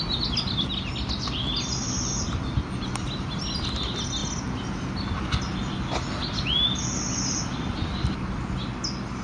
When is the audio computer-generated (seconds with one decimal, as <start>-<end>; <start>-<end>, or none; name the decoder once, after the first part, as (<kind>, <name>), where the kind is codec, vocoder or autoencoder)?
none